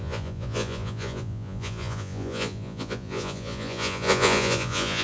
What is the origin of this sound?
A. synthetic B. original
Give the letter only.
A